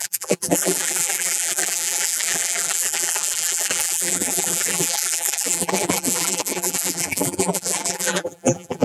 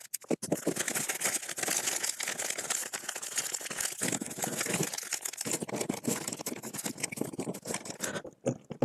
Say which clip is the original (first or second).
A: second